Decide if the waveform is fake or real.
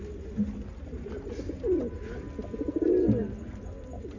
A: real